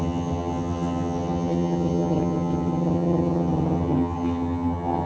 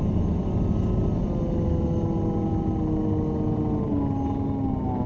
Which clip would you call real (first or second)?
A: second